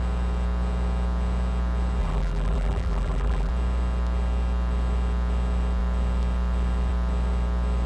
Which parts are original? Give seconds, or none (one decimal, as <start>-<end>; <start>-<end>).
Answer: 0.0-2.0; 3.5-7.9